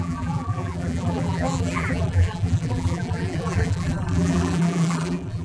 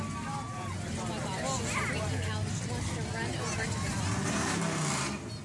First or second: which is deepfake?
first